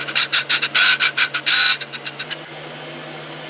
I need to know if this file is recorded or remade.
recorded